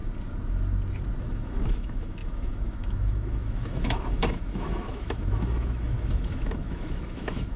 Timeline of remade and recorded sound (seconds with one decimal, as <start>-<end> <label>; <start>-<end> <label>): 0.0-1.2 recorded; 1.2-7.6 remade